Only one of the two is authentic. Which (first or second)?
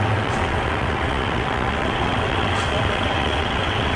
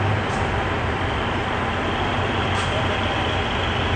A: second